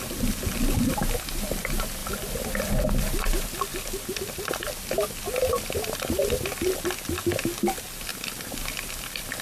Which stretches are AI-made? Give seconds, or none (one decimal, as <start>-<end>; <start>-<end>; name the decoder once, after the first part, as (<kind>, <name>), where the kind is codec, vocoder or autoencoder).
2.0-2.7 (vocoder, BigVGAN v2)